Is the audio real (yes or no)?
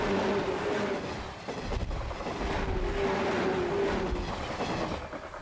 yes